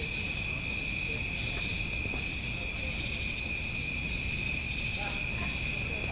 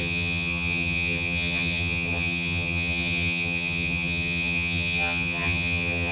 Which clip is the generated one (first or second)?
second